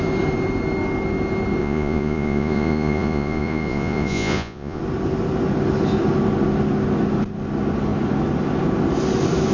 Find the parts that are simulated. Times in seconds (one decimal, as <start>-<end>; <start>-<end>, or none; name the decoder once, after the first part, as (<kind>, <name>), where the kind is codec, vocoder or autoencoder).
1.6-4.8 (vocoder, Vocos)

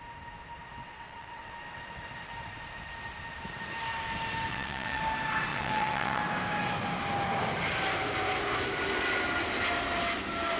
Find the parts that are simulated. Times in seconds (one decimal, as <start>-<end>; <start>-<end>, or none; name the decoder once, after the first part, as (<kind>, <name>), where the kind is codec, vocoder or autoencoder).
0.8-1.5 (vocoder, WaveNeXt); 4.5-5.0; 5.5-6.2

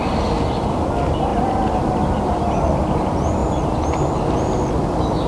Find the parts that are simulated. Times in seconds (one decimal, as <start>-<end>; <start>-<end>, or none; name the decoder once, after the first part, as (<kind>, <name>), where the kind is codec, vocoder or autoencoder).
1.3-2.3 (vocoder, BigVGAN v2); 3.4-5.3